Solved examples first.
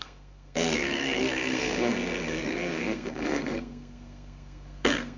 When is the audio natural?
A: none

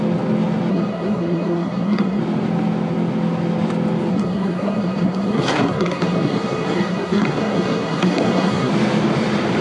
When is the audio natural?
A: 0.0-0.7; 2.2-4.1; 8.7-9.6

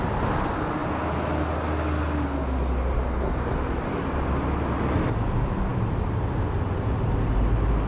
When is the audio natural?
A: 0.0-7.9

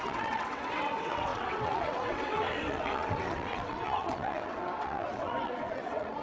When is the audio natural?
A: none

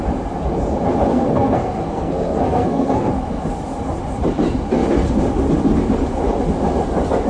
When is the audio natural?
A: 0.0-1.1; 3.1-7.3

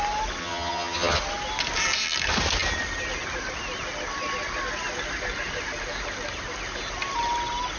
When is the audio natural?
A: 0.0-0.4; 1.2-7.8

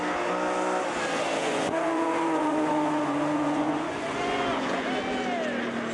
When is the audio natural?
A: 0.0-1.4; 4.9-5.9

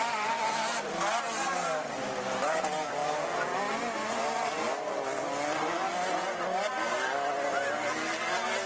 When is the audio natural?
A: 0.0-8.7